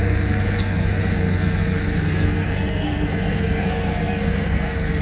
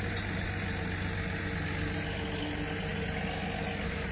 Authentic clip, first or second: second